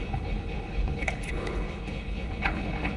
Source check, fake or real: fake